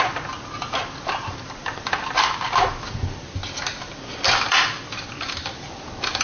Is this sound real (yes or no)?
yes